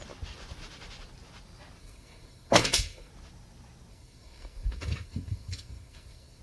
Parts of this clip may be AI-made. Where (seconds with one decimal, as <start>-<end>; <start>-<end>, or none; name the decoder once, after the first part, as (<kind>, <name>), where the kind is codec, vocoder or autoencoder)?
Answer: 1.8-3.1 (codec, SNAC); 3.9-6.4